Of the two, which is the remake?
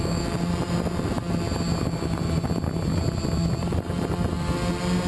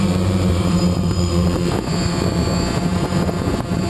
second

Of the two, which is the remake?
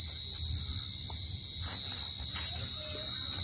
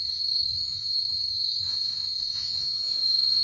second